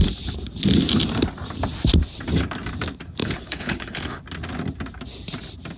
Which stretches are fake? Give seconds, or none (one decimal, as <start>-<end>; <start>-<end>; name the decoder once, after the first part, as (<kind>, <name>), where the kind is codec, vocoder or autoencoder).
3.2-4.2 (codec, HILCodec)